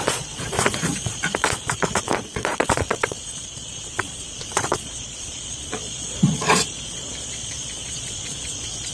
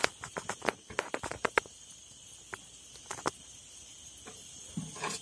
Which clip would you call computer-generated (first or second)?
first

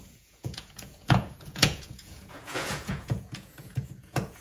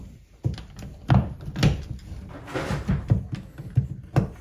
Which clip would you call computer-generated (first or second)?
first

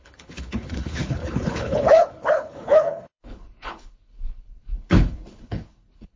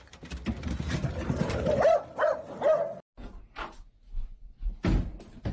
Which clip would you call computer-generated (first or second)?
first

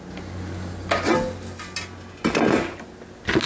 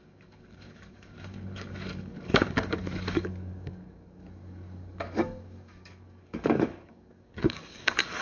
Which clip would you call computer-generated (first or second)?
second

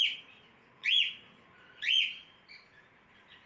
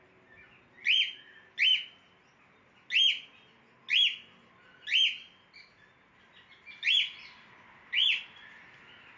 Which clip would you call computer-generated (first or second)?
first